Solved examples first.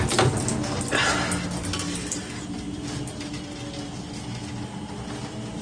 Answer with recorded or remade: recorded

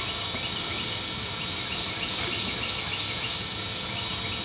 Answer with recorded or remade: recorded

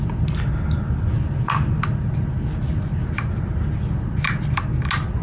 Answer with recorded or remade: recorded